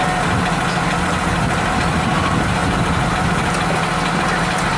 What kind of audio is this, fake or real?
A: real